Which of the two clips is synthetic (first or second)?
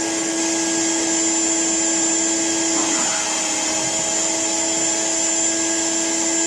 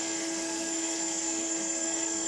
second